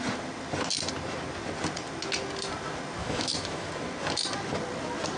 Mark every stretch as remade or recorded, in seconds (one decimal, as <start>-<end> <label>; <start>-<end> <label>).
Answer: 0.0-3.0 recorded; 3.0-3.7 remade; 3.7-5.2 recorded